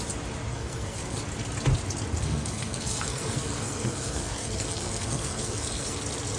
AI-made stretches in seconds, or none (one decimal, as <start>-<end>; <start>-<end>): 0.5-1.2; 2.2-6.0